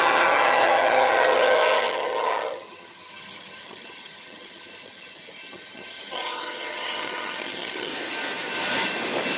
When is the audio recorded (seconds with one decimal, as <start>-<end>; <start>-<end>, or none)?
7.9-9.4